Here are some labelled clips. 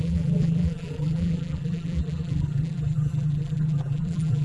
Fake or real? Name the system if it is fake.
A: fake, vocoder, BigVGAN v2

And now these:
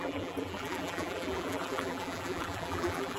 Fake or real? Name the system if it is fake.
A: fake, vocoder, BigVGAN v2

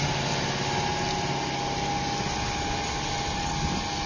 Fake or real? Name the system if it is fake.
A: real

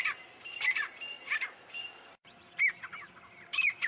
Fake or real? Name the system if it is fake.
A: fake, vocoder, BigVGAN v2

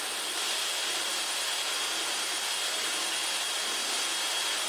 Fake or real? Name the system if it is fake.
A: real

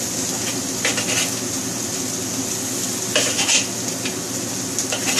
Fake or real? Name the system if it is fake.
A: real